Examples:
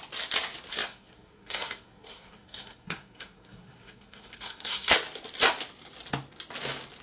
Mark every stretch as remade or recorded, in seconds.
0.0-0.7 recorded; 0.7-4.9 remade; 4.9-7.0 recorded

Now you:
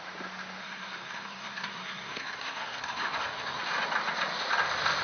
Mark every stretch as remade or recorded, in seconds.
0.0-0.6 recorded; 0.6-3.6 remade; 3.6-5.0 recorded